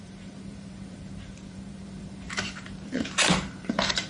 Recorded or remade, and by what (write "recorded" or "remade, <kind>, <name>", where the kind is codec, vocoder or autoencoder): remade, vocoder, BigVGAN v2